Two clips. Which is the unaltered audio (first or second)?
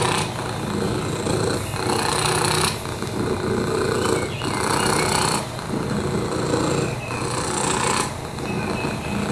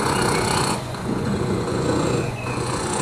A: first